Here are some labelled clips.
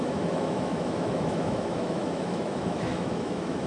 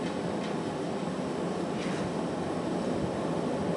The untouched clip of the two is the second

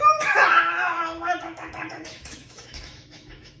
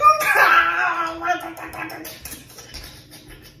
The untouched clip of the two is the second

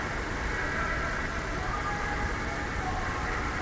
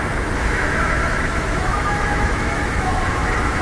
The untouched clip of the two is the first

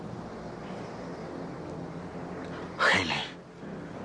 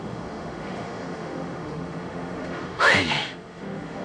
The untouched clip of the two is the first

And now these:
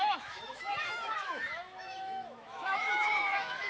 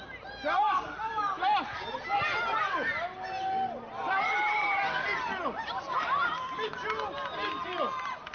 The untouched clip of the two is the second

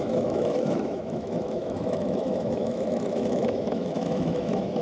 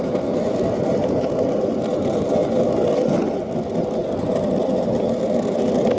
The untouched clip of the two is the second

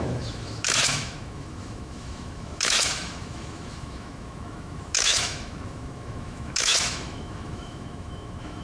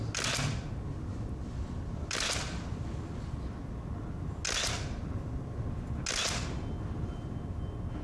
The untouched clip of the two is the second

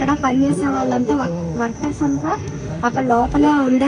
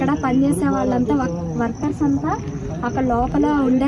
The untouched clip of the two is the second